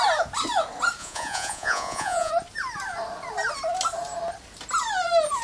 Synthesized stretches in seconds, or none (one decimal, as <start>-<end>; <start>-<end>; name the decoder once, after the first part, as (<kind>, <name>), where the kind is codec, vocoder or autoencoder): 1.0-2.3 (vocoder, Vocos)